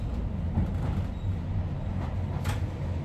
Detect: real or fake real